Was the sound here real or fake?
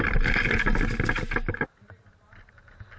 real